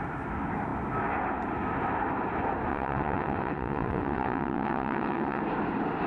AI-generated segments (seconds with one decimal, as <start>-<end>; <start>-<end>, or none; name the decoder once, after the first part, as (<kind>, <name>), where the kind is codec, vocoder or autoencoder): 2.7-5.4 (vocoder, WaveNeXt)